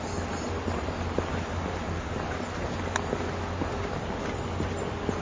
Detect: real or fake real